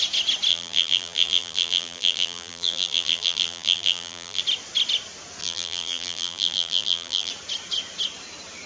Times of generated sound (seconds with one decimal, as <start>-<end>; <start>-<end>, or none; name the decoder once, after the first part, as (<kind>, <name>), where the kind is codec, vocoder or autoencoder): 0.5-4.4 (vocoder, BigVGAN v2); 5.4-7.3

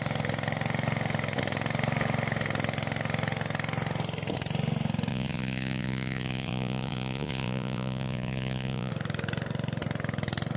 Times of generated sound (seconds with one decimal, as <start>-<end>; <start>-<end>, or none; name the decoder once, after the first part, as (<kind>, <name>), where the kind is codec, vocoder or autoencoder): 5.1-8.9 (vocoder, Vocos)

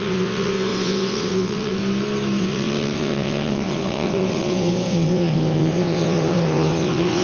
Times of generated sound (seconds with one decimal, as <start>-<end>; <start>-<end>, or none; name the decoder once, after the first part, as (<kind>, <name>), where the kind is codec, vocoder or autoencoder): 0.0-1.8 (vocoder, WaveNeXt); 2.4-7.2

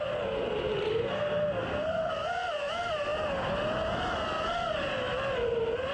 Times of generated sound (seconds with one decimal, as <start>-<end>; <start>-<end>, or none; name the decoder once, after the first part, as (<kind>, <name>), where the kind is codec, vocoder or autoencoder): 0.9-2.1 (codec, SNAC)